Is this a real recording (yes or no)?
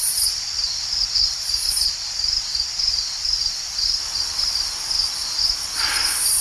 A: yes